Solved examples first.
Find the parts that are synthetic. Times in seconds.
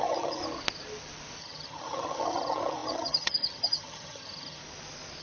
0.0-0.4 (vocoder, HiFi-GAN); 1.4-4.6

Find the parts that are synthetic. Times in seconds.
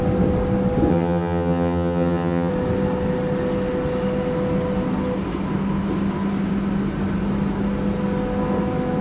0.9-2.5 (vocoder, HiFi-GAN)